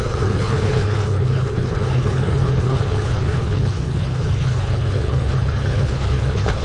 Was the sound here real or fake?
fake